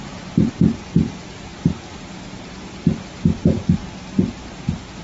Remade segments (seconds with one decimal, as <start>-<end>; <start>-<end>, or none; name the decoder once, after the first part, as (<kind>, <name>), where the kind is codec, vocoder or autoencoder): 0.0-1.5 (vocoder, BigVGAN v2); 4.0-5.0